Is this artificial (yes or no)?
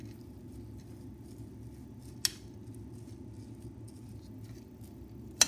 no